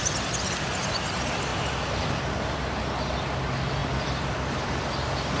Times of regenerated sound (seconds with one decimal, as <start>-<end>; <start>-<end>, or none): none